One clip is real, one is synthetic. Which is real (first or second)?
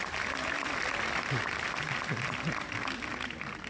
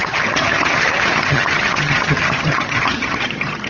first